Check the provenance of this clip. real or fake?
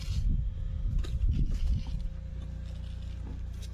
real